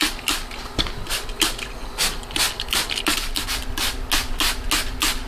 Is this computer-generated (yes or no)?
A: no